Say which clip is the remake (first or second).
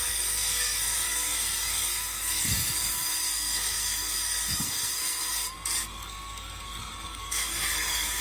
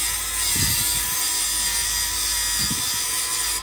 first